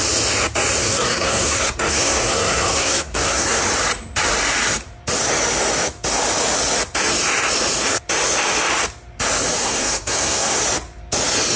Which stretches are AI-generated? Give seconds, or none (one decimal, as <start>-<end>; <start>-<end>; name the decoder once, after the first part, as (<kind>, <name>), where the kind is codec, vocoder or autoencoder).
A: 0.8-3.6 (codec, SNAC); 9.6-10.6